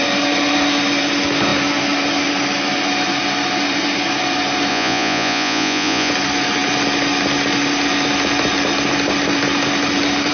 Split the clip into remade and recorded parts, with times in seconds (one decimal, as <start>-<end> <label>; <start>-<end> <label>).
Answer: 0.0-4.7 recorded; 4.7-6.1 remade; 6.1-10.3 recorded